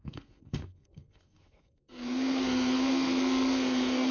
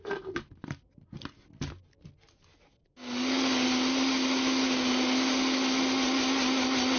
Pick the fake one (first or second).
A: first